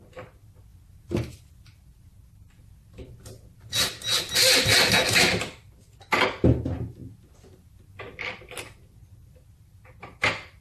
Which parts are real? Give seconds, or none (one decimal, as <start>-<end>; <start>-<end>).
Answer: 0.0-10.6

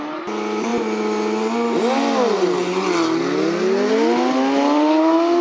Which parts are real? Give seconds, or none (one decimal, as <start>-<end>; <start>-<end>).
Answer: 0.0-5.4

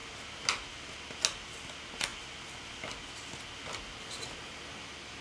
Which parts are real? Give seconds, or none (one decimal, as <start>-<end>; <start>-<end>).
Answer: 0.0-5.2

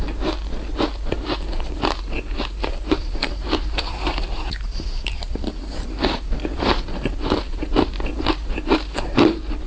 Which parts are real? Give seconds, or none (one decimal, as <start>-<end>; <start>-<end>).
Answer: 0.0-1.1

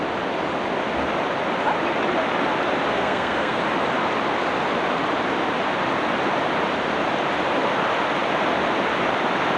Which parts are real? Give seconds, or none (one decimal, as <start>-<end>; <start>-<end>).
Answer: 0.0-2.9; 3.6-9.6

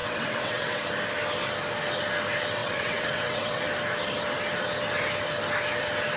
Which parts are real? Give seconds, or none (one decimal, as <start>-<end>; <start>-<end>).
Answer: 0.8-2.6; 3.6-6.2